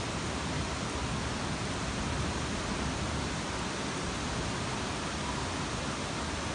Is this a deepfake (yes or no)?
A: no